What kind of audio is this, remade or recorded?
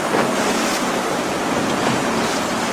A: recorded